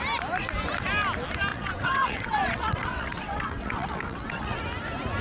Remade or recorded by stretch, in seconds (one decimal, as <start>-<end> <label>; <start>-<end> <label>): 0.0-1.5 recorded; 1.5-4.6 remade; 4.6-5.2 recorded